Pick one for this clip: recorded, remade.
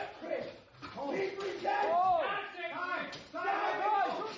recorded